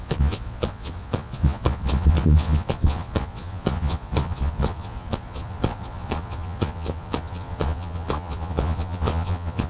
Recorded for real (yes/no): no